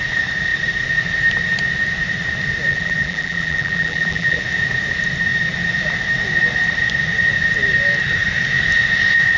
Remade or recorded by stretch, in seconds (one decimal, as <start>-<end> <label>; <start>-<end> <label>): 0.0-2.7 recorded; 2.7-4.4 remade; 4.4-9.4 recorded